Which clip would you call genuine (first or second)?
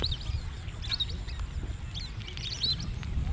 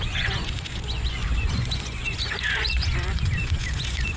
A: first